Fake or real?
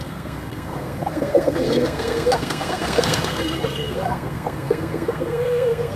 fake